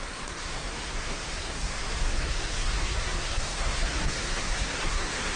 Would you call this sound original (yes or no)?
no